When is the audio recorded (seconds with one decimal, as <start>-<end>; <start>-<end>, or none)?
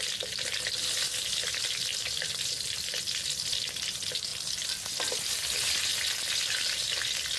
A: 0.0-1.9; 2.9-4.3; 5.2-7.4